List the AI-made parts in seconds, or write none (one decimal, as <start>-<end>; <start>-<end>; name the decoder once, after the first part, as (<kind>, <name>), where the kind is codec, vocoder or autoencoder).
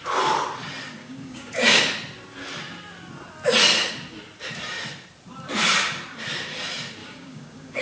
1.0-1.8 (codec, DAC); 7.0-7.8